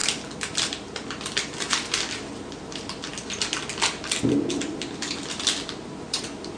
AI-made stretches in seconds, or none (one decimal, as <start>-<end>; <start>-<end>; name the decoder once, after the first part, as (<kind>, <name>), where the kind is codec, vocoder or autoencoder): 1.1-3.1 (vocoder, BigVGAN v2); 4.5-6.6